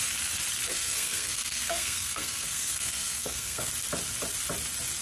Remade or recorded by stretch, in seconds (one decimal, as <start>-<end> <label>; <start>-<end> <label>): 0.0-0.7 recorded; 0.7-3.7 remade; 3.7-5.0 recorded